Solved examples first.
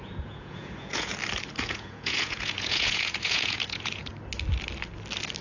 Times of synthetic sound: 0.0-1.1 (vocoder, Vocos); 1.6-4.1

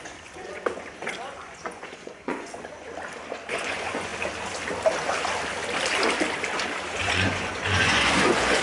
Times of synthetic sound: 0.0-2.8 (vocoder, Vocos); 3.5-4.1; 7.0-8.6